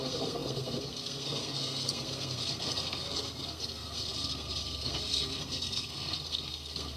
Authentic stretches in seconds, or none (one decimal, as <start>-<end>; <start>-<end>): none